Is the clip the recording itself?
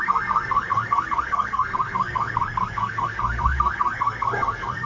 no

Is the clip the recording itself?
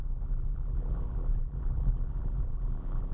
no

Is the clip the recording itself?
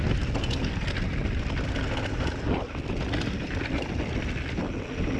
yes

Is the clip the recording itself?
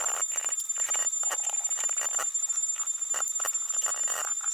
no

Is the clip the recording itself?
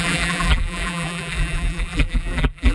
no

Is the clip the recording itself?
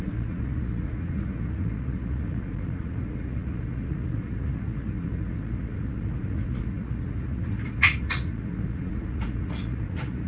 no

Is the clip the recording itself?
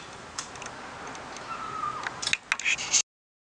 yes